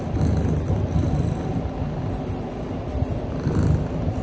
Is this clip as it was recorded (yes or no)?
yes